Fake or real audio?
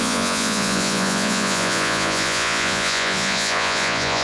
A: fake